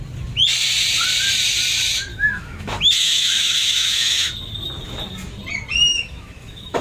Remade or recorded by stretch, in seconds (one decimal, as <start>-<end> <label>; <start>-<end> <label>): 0.0-2.1 recorded; 2.1-4.3 remade; 4.3-5.9 recorded; 5.9-6.8 remade